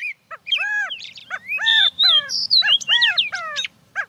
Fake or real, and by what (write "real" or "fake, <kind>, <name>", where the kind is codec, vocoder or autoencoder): fake, vocoder, BigVGAN v2